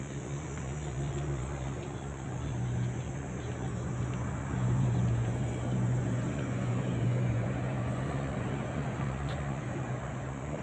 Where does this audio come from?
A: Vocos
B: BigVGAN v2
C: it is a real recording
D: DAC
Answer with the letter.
A